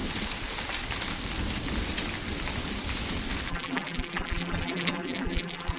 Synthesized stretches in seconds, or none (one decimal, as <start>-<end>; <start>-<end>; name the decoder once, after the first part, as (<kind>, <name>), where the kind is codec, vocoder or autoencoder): 3.5-5.8 (vocoder, BigVGAN v2)